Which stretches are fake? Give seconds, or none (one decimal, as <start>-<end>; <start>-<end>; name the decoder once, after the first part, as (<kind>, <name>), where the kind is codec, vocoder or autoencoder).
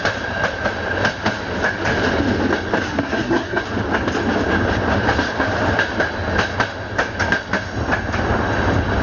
2.9-3.6 (codec, SNAC)